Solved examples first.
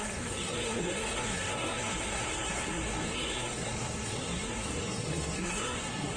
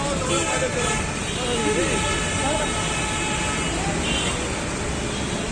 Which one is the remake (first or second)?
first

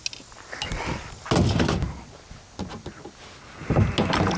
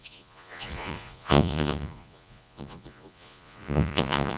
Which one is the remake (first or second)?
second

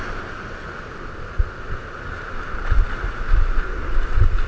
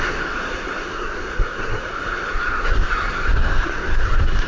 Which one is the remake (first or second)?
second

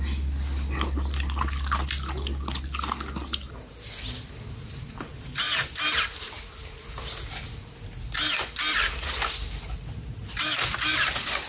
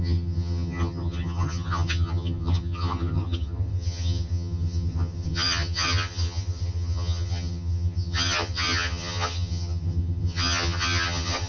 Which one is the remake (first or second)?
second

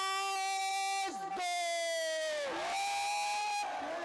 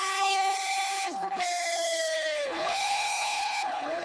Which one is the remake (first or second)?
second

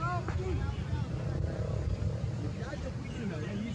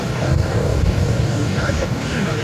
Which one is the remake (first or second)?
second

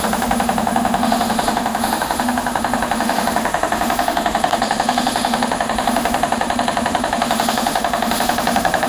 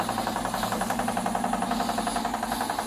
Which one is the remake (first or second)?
first